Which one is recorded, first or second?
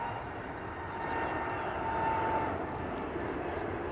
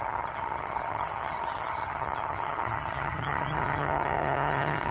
first